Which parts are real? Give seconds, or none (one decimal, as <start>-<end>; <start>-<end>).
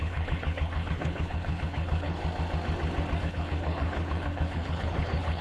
2.2-3.2